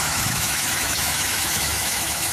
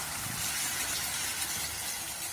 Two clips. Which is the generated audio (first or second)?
first